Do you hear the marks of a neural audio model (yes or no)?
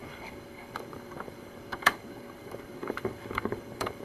yes